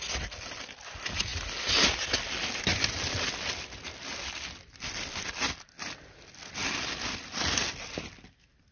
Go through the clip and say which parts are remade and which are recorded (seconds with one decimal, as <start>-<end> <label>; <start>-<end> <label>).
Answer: 0.0-8.7 recorded

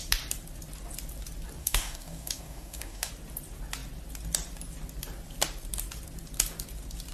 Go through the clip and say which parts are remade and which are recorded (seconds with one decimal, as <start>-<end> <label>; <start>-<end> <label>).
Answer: 0.0-1.6 recorded; 1.6-3.1 remade; 3.1-7.1 recorded